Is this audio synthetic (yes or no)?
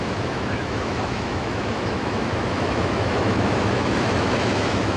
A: yes